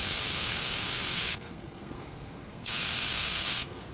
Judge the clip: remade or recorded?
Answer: remade